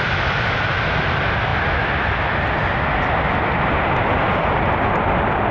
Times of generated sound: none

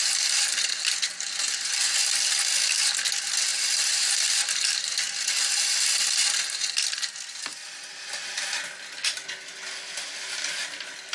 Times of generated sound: none